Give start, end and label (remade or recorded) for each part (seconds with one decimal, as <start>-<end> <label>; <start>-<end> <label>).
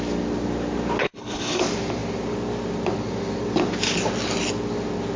0.0-1.0 recorded; 1.0-1.6 remade; 1.6-5.2 recorded